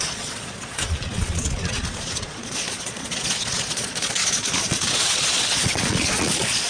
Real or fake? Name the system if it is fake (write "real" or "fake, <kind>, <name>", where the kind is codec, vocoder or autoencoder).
fake, vocoder, Vocos